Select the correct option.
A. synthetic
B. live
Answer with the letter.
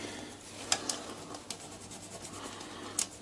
B